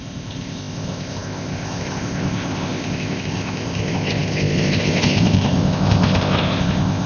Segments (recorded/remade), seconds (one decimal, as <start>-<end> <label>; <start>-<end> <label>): 0.0-7.1 remade